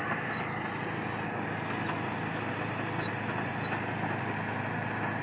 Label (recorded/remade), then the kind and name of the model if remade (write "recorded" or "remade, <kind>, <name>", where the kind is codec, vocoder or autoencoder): recorded